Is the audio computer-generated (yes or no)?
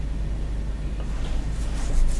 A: no